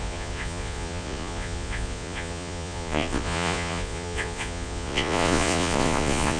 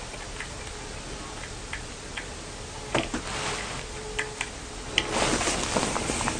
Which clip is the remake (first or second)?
first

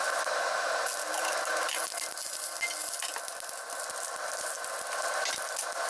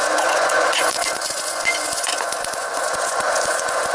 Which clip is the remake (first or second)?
second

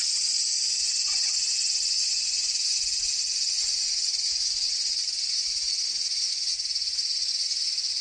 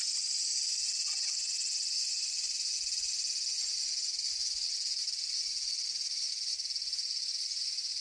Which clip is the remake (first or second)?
first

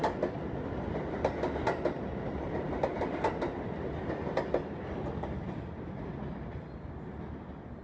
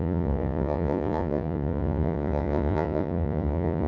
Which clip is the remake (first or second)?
second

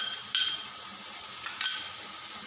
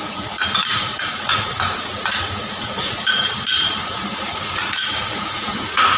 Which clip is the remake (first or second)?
second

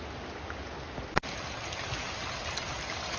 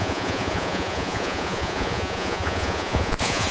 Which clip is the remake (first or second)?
second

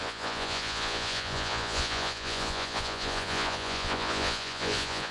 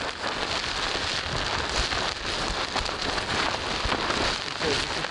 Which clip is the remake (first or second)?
first